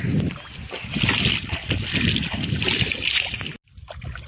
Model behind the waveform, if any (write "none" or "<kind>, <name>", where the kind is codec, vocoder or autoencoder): none